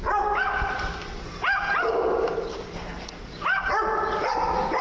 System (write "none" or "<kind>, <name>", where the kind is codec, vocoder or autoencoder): none